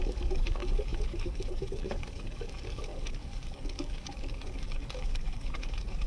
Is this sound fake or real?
fake